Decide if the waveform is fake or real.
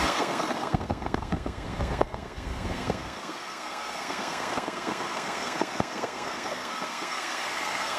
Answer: fake